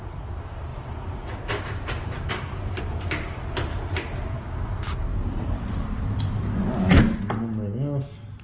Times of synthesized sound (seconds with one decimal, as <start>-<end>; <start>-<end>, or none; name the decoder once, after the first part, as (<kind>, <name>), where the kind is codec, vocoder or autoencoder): 0.7-2.8 (vocoder, BigVGAN v2)